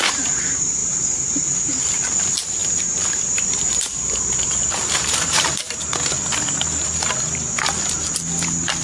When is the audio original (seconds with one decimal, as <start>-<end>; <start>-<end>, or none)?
0.0-0.8; 2.0-2.6; 5.8-8.8